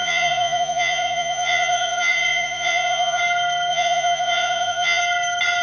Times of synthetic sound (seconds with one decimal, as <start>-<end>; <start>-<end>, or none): 0.0-3.2; 3.7-5.0